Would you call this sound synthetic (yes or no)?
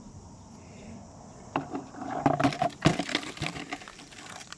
no